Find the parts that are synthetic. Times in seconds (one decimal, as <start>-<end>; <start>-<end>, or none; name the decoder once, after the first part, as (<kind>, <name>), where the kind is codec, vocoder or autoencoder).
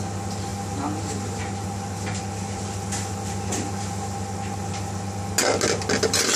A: none